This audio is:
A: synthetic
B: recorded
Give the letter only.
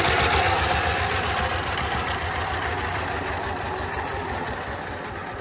B